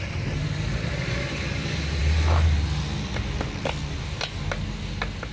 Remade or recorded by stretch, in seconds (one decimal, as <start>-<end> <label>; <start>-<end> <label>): 0.0-5.3 recorded